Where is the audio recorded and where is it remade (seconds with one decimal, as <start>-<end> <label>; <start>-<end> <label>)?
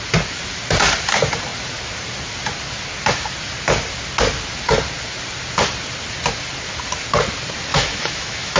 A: 0.0-7.7 recorded; 7.7-8.6 remade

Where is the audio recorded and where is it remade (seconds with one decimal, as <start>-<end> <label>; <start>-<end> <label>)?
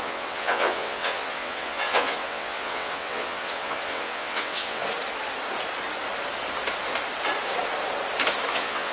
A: 0.0-4.8 remade; 4.8-8.5 recorded; 8.5-8.9 remade